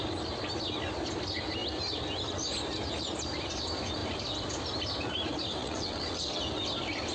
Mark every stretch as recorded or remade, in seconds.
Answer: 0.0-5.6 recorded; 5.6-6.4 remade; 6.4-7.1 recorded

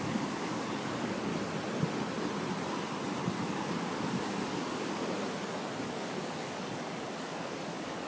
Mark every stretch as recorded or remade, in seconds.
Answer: 0.0-1.3 remade; 1.3-3.3 recorded; 3.3-5.0 remade; 5.0-5.8 recorded; 5.8-8.1 remade

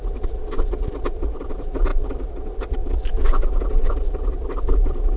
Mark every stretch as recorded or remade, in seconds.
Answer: 0.0-5.2 recorded

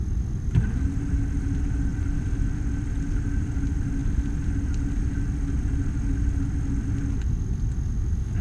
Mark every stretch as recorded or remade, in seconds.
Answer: 0.0-8.4 recorded

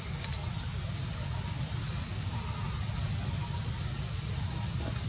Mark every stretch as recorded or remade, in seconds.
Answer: 0.0-5.1 recorded

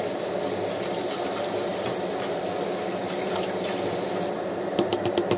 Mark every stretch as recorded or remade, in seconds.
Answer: 0.0-1.7 recorded; 1.7-2.4 remade; 2.4-3.0 recorded; 3.0-4.9 remade; 4.9-5.4 recorded